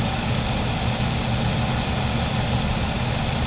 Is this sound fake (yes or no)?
yes